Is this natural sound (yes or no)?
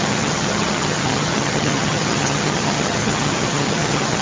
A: no